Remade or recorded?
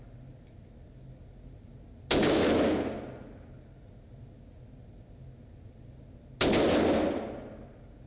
recorded